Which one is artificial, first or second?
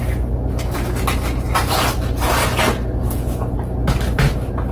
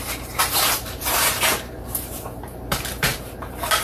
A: second